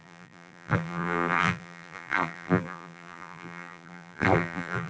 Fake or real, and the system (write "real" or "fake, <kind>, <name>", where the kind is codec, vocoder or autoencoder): fake, vocoder, BigVGAN v2